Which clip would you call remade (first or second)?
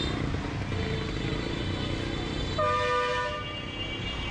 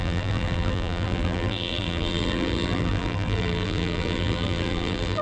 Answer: second